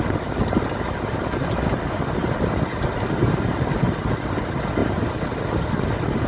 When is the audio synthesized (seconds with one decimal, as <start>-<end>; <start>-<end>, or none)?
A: none